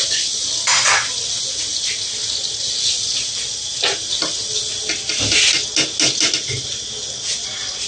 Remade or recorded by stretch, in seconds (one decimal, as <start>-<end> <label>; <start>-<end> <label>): 0.0-7.9 recorded